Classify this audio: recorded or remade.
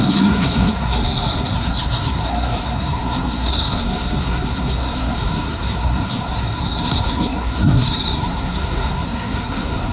remade